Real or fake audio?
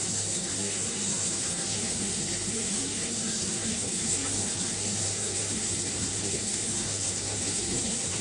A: fake